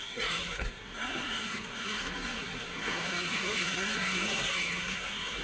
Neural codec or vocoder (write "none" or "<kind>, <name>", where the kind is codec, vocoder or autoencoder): codec, SNAC